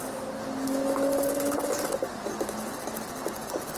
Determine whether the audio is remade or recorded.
recorded